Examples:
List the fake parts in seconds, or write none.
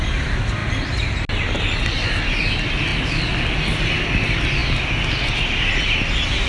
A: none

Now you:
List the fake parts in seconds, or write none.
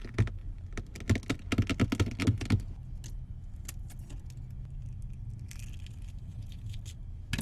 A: 6.3-6.8 (vocoder, Vocos)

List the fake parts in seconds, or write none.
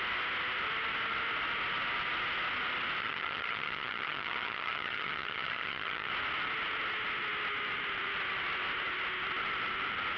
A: 3.0-6.1 (vocoder, HiFi-GAN)